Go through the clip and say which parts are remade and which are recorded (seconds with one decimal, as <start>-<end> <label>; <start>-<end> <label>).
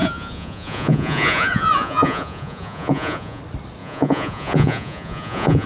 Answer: 0.0-3.4 remade; 3.4-3.8 recorded; 3.8-5.7 remade